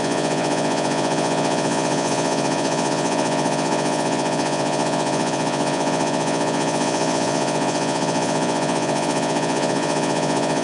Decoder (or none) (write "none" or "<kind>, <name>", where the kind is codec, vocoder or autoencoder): vocoder, Vocos